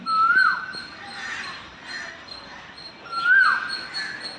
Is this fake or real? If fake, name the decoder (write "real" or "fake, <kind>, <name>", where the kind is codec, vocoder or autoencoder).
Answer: real